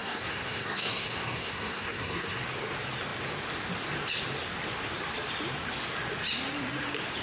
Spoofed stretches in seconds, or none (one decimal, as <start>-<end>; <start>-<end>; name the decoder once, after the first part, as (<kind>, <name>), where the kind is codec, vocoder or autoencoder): 0.0-2.4 (codec, SNAC)